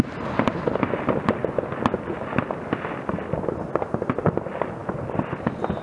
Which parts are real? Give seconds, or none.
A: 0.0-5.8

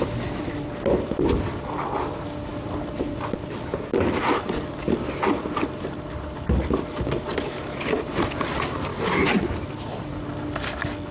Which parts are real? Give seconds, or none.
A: 0.0-11.1

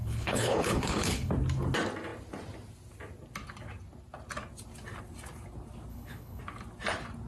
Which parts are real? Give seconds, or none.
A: 1.3-5.9; 6.4-7.3

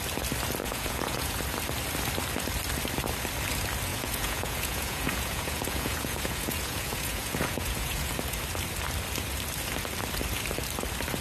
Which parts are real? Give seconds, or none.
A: 0.0-0.6; 1.4-3.9; 8.1-11.2

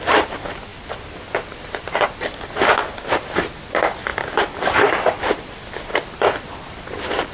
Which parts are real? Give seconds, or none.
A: 0.0-0.7; 2.5-5.9

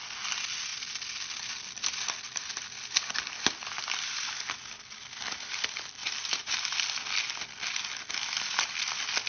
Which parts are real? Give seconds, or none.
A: 0.0-6.0; 6.6-9.3